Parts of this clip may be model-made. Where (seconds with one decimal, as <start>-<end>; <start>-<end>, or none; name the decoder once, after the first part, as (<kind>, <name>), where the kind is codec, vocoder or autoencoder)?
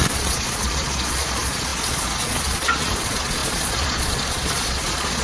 0.0-5.2 (vocoder, Vocos)